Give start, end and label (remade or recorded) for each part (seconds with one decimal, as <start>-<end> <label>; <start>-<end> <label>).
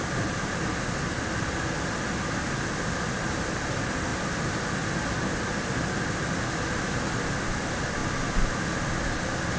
0.0-9.6 recorded